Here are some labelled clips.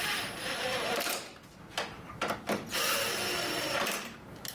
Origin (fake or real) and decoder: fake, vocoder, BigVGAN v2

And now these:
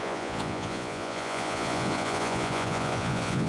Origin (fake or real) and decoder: fake, vocoder, Vocos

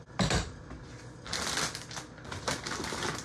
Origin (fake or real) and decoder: real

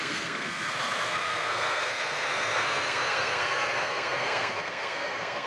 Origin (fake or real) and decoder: fake, codec, SNAC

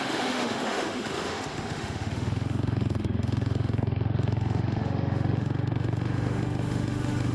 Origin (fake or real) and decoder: fake, autoencoder, DAC-VAE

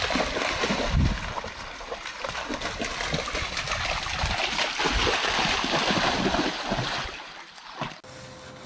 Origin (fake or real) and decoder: real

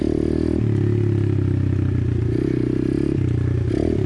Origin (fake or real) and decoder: real